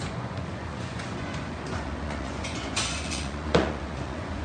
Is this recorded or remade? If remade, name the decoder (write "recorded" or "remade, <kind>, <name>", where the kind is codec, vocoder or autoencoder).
remade, vocoder, Vocos